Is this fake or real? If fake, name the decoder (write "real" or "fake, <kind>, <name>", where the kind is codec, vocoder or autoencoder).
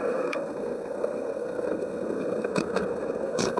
fake, codec, SNAC